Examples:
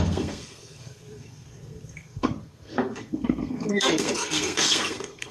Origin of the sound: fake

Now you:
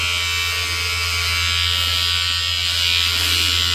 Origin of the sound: real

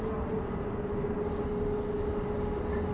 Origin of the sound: real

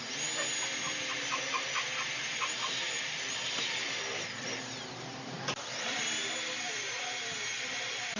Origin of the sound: real